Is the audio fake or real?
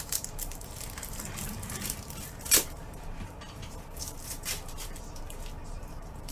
fake